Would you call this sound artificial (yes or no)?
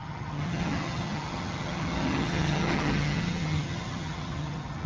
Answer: yes